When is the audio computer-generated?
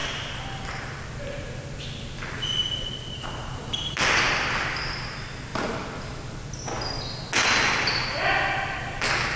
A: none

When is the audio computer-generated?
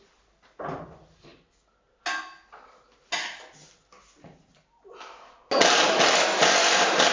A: none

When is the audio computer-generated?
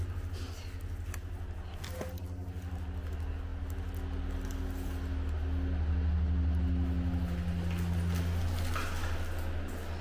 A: none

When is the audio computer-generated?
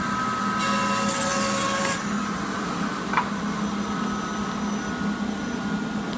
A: none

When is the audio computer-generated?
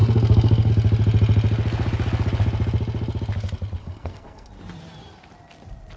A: 0.0-0.7 (codec, SNAC); 3.8-4.5